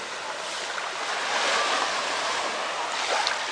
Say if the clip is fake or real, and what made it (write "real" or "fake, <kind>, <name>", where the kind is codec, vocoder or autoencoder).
real